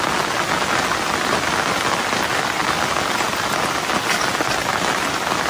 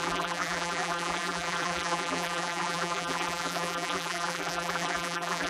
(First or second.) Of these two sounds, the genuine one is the first